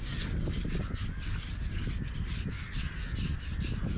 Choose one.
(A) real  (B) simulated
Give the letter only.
A